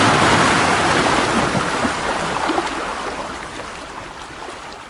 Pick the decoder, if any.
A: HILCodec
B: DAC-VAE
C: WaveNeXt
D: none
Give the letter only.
D